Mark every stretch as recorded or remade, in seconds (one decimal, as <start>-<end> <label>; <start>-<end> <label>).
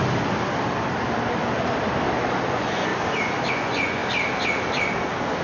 0.0-2.5 recorded; 2.5-2.9 remade; 2.9-3.5 recorded; 3.5-4.0 remade; 4.0-5.4 recorded